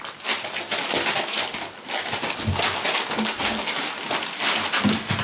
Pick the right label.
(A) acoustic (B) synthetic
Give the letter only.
A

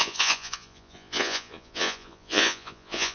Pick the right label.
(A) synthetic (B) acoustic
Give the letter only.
A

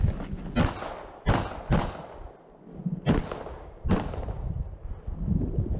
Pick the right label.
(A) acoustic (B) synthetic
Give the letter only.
A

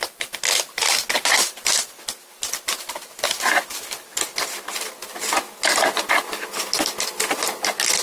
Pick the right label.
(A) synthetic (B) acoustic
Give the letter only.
B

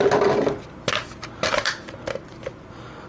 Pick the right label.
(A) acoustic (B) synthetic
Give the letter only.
A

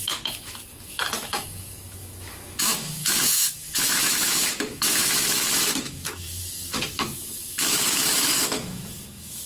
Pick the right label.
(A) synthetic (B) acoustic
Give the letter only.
A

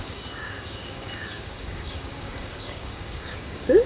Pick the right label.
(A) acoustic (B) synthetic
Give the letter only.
B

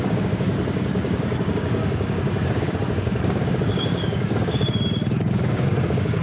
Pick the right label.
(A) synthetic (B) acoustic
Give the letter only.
A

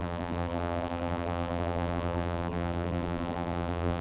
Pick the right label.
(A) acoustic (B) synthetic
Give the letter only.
B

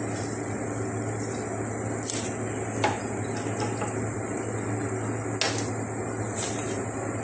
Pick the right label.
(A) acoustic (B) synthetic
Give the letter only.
A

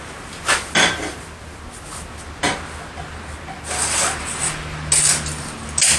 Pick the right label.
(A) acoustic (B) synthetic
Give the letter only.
A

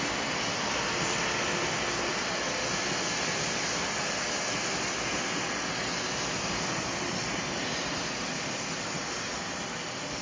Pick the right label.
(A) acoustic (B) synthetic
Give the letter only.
A